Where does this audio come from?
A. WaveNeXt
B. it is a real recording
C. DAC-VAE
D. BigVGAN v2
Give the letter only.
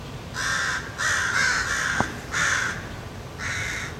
B